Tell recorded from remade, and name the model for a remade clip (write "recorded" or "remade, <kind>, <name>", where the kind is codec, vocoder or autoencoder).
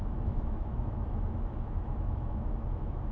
remade, autoencoder, DAC-VAE